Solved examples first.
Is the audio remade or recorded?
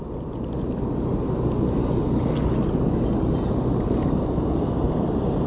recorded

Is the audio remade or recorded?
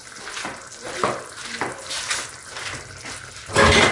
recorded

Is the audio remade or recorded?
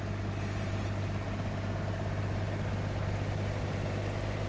recorded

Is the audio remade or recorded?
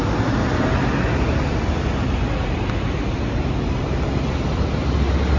recorded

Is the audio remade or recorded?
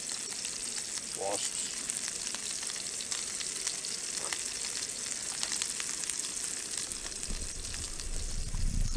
recorded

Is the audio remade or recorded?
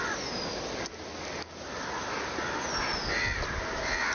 recorded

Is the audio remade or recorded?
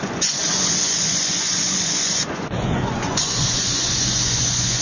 remade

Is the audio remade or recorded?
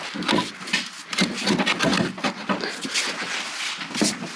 recorded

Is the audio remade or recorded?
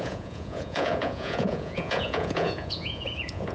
remade